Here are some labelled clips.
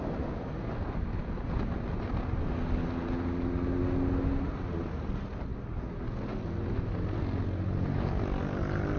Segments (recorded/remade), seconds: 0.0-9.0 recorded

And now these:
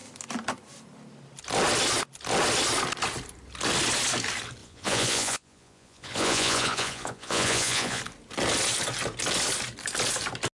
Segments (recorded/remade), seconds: 0.0-4.6 recorded; 4.6-8.0 remade; 8.0-10.6 recorded

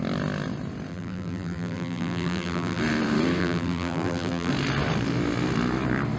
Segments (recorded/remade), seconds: 0.0-0.9 recorded; 0.9-2.8 remade; 2.8-3.4 recorded; 3.4-4.5 remade; 4.5-6.2 recorded